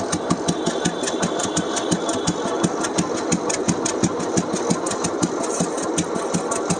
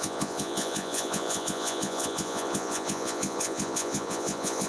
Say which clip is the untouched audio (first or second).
first